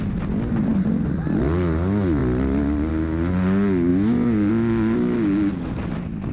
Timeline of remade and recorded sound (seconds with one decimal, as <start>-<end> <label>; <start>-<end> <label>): 0.0-6.3 recorded